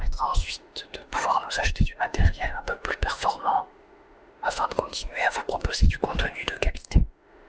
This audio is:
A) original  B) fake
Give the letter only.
B